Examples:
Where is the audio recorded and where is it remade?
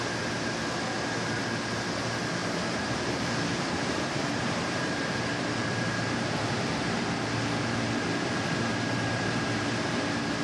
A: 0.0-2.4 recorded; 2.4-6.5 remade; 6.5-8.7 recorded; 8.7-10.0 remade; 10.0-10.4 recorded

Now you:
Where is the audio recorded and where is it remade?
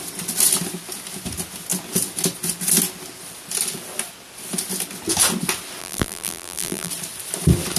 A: 0.0-5.8 recorded; 5.8-6.9 remade; 6.9-7.8 recorded